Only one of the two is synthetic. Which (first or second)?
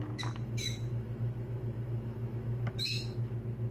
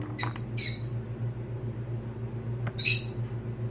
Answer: first